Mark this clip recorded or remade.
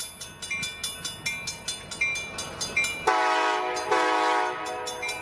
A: recorded